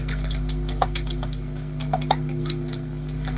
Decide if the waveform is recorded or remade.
remade